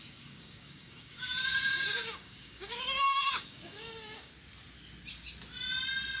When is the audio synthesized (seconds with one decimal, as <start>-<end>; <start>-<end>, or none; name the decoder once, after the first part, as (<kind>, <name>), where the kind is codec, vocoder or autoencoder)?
0.0-4.3 (codec, DAC)